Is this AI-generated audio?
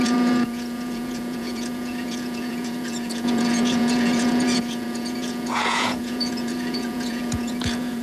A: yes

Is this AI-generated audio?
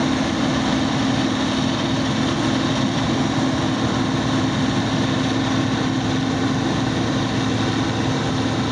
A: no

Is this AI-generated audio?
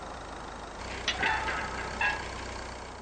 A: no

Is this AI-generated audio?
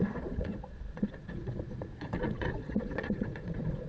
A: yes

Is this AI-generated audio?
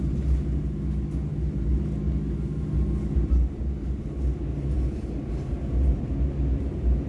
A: no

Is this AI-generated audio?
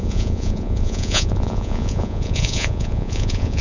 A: yes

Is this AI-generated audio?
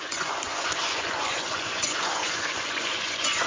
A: yes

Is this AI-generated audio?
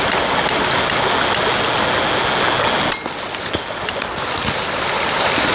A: no